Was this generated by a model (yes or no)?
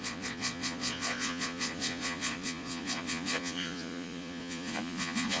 yes